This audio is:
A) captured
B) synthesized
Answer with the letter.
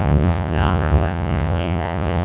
B